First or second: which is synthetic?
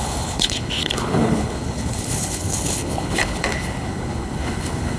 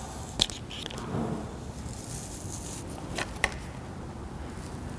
first